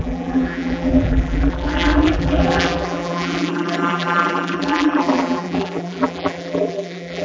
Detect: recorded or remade remade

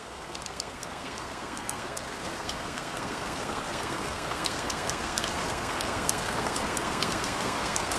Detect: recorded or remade remade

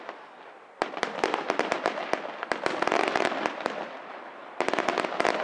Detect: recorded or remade recorded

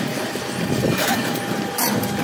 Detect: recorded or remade remade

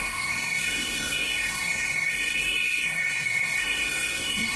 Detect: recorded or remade remade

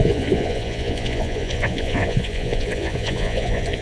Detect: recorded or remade remade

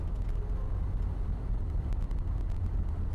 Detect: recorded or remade recorded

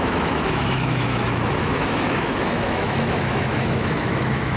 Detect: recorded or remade remade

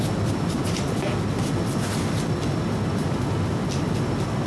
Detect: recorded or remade recorded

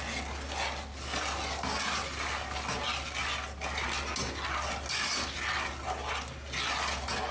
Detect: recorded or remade recorded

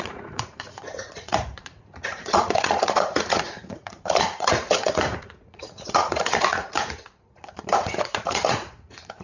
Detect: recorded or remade remade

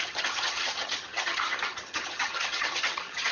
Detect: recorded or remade remade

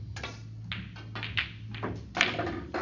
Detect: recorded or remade recorded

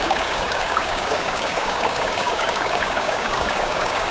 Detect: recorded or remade remade